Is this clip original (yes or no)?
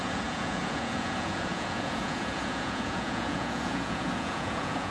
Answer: no